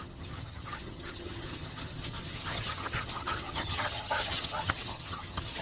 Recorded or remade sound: remade